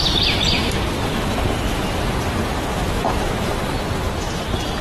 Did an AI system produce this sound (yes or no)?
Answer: no